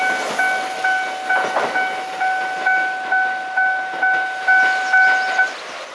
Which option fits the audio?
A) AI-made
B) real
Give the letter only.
B